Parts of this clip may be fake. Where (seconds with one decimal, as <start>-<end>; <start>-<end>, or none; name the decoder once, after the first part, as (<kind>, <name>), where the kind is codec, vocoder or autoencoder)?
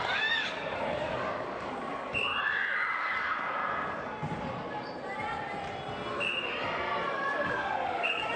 0.0-2.3 (codec, DAC); 2.9-3.6; 7.1-8.4